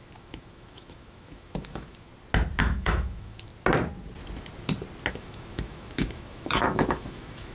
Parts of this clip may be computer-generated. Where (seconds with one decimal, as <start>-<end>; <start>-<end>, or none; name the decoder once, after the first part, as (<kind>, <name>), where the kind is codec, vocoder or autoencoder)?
0.0-2.1 (autoencoder, DAC-VAE); 2.6-3.5; 5.1-7.5